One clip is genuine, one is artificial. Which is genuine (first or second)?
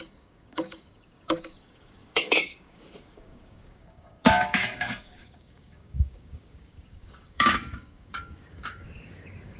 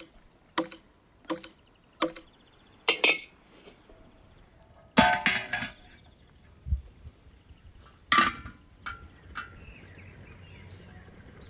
second